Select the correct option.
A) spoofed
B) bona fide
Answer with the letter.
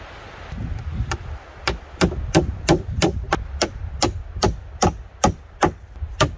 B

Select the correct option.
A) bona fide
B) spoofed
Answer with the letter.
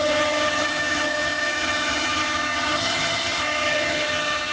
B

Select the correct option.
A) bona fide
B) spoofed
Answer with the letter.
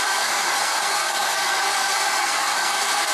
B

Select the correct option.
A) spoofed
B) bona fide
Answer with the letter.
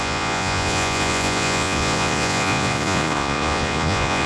A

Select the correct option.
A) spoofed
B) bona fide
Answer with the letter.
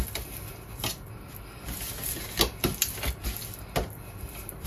B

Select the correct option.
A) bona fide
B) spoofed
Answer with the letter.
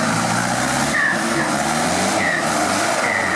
A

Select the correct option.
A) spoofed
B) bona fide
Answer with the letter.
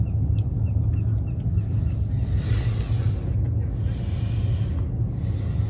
B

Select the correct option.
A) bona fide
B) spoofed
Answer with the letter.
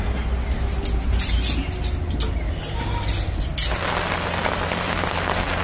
A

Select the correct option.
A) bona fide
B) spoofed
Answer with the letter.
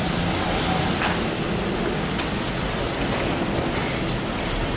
A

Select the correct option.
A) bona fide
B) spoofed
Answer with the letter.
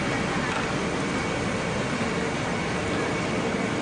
A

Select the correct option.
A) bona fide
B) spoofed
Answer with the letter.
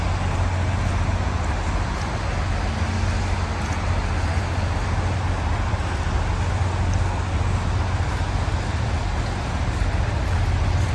A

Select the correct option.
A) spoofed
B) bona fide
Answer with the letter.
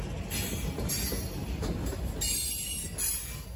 B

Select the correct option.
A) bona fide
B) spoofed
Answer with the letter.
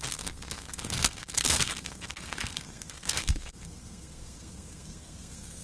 B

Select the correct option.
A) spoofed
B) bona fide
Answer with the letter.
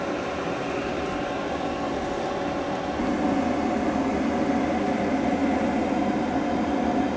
B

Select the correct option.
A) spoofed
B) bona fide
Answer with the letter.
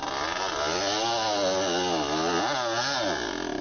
B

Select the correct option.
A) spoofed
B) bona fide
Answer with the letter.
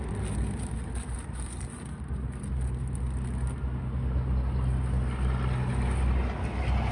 B